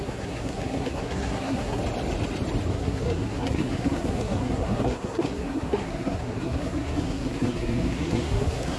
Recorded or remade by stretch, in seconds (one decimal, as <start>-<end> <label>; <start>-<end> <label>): 0.0-1.8 remade; 1.8-2.7 recorded; 2.7-8.8 remade